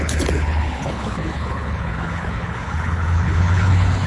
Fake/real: fake